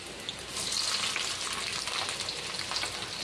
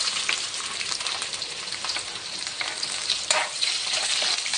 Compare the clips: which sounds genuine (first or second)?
first